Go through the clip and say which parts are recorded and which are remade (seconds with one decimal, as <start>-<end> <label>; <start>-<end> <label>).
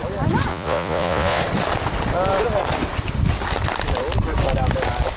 0.0-0.5 recorded; 0.5-1.4 remade; 1.4-5.2 recorded